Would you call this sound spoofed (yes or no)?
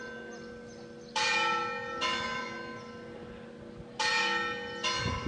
no